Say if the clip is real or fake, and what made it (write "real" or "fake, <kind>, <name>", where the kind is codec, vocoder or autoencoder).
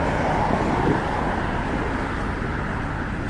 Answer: real